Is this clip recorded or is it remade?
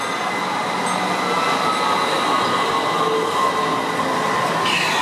recorded